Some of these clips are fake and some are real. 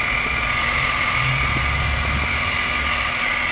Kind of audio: real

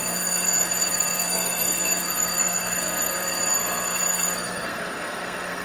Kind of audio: fake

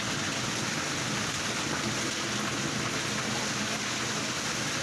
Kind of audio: real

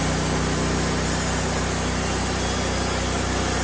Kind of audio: real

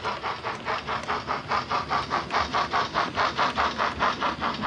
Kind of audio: real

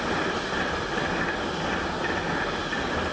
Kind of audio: real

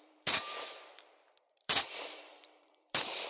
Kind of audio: fake